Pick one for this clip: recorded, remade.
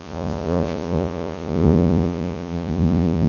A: remade